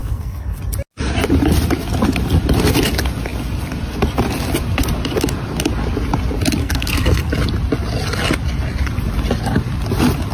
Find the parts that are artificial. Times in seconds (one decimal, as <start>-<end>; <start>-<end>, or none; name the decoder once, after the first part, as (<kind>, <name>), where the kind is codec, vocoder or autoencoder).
0.0-0.6 (codec, SNAC); 6.6-7.3